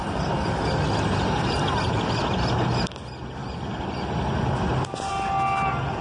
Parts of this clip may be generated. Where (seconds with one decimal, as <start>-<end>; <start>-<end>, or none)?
none